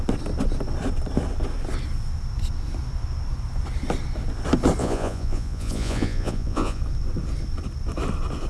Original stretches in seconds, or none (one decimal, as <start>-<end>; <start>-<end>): 0.0-4.8; 6.8-8.5